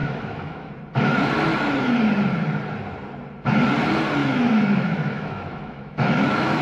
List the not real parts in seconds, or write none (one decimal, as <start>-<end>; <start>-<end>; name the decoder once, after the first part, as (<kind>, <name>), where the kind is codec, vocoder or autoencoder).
0.0-0.7 (autoencoder, DAC-VAE); 4.2-6.6